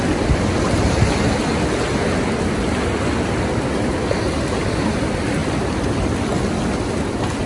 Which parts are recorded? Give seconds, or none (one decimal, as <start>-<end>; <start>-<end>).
0.0-5.4; 6.4-7.5